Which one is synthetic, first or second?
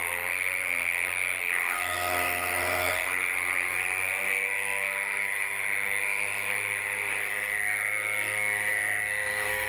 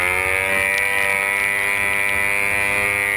first